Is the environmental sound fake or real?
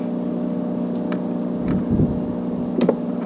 real